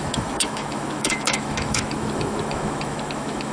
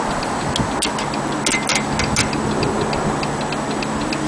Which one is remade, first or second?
first